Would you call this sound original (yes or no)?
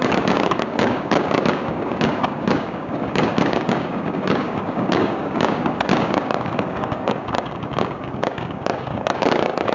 no